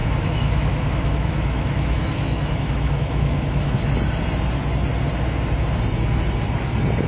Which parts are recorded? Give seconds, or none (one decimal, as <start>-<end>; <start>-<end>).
3.9-7.1